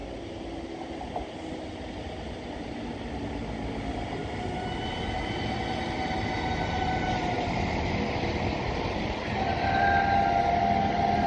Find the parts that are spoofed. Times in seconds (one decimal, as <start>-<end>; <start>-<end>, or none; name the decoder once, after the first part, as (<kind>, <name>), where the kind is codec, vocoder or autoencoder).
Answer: none